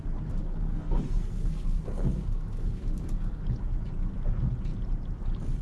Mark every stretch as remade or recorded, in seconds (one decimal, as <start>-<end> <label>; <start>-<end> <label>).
0.0-0.4 recorded; 0.4-3.4 remade; 3.4-5.6 recorded